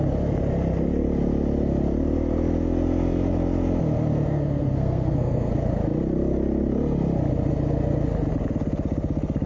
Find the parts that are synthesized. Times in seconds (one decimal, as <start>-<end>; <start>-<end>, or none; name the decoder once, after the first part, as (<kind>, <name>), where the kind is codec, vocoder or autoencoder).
4.3-5.5 (codec, SNAC)